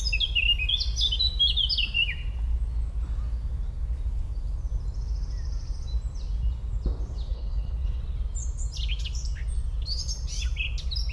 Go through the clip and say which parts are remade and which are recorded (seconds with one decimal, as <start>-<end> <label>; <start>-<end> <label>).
0.0-7.3 recorded; 7.3-8.0 remade; 8.0-11.1 recorded